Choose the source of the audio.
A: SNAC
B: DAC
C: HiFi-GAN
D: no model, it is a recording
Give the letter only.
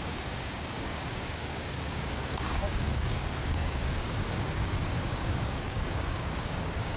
B